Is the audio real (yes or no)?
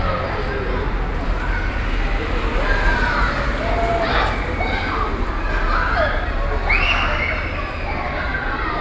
yes